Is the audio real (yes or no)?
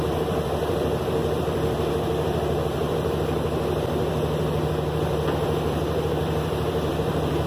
no